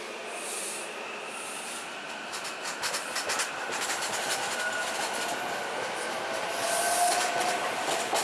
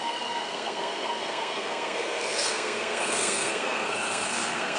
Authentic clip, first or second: first